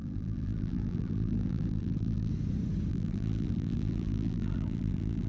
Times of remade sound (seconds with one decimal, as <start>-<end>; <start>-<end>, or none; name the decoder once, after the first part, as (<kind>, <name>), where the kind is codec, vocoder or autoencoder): 0.0-2.3 (vocoder, BigVGAN v2); 2.9-5.3